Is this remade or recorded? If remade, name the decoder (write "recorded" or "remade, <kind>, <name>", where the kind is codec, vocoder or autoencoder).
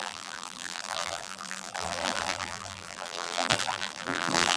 remade, vocoder, BigVGAN v2